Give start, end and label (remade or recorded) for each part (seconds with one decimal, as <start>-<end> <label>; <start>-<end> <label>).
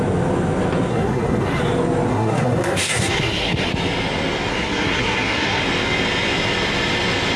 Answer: 0.0-0.9 recorded; 0.9-1.6 remade; 1.6-2.1 recorded; 2.1-3.7 remade; 3.7-4.5 recorded; 4.5-5.6 remade; 5.6-7.4 recorded